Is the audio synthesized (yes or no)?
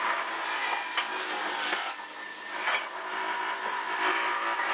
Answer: no